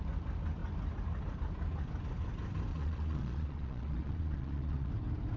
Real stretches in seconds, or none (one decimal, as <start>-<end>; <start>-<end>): 0.0-2.7; 4.9-5.4